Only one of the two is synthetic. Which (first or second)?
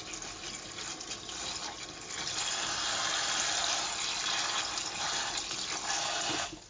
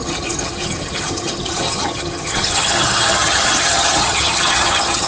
second